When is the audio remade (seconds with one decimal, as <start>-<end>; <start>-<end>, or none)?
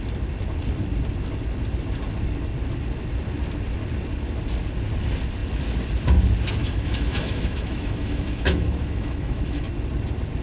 6.6-9.7